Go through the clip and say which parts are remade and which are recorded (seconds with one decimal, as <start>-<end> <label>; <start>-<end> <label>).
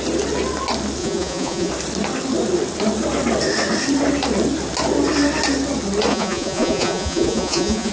0.0-1.0 recorded; 1.0-1.7 remade; 1.7-6.1 recorded; 6.1-7.9 remade